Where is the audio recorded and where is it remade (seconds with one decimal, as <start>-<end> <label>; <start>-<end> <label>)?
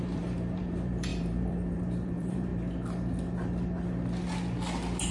0.0-2.5 remade; 2.5-5.1 recorded